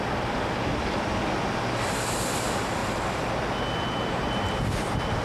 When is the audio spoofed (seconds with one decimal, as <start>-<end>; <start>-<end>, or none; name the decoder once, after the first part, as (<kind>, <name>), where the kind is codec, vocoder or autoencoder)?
2.8-3.3 (vocoder, BigVGAN v2)